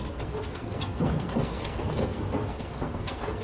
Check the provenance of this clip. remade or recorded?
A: remade